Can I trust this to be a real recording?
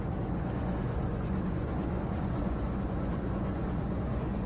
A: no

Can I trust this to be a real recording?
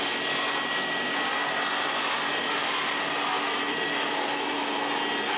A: yes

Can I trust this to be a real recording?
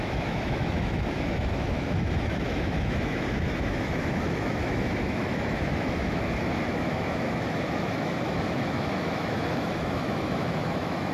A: no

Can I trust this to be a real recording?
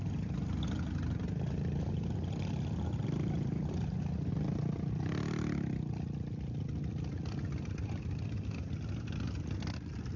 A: yes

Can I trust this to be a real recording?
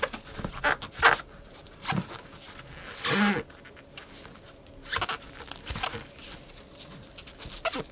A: yes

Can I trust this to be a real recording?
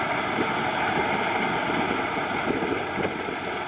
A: yes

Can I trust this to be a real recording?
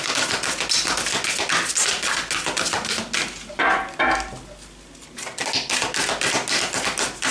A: yes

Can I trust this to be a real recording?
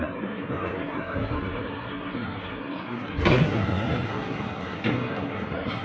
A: no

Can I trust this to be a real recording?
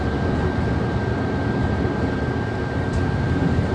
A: no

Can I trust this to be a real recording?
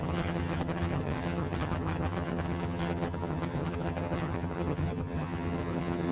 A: no